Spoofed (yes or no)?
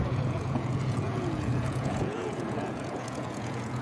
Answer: yes